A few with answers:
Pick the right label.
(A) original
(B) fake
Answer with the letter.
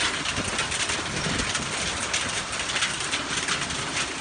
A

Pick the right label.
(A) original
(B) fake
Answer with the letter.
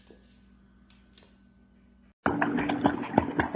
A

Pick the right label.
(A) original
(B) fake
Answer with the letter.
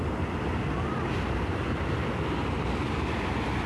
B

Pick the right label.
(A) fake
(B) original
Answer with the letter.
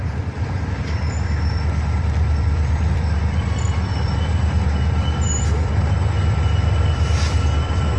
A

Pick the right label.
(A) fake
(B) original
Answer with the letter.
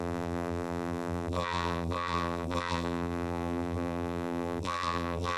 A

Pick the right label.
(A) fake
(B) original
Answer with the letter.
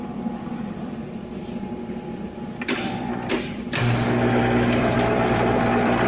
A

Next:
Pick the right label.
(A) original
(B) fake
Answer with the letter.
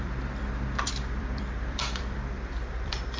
B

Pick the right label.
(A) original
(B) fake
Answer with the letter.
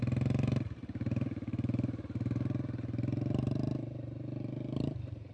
B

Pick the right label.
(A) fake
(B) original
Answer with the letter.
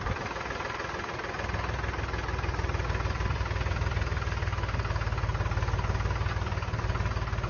B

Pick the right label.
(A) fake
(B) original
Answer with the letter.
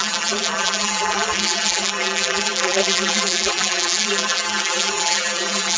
A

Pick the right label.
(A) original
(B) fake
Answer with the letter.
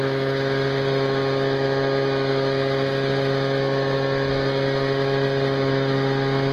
A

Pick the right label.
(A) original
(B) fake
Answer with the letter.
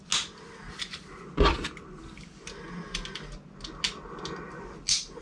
A